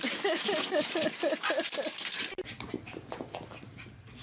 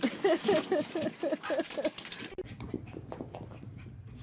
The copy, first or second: second